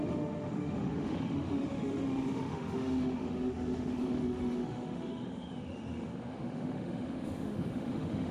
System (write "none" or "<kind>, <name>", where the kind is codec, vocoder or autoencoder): autoencoder, DAC-VAE